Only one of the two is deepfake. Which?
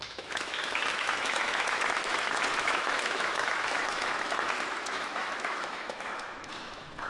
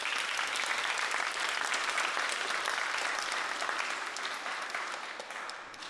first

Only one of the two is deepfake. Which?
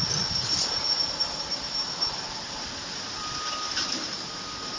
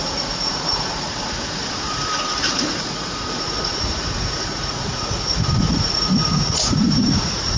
second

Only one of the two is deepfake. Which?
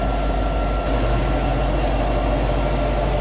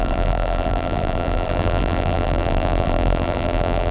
second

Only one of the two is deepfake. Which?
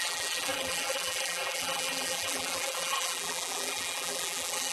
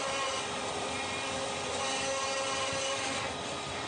first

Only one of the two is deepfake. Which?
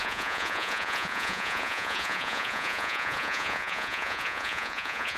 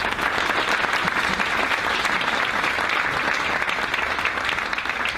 first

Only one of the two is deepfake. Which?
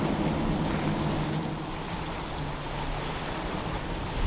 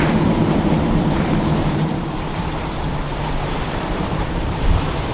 second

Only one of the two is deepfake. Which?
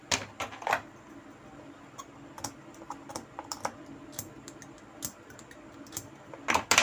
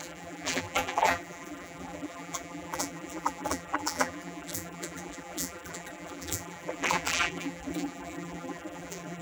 second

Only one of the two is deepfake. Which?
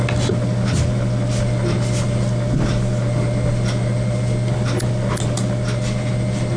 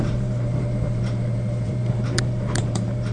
second